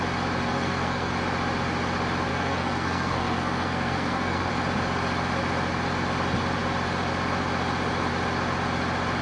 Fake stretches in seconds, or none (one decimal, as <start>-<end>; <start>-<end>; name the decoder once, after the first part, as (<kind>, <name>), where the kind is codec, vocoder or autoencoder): 0.4-1.1 (codec, SNAC); 2.3-4.5